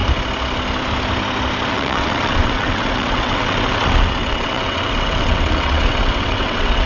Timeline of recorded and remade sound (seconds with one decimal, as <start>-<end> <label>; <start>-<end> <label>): 0.0-1.7 recorded; 1.7-6.9 remade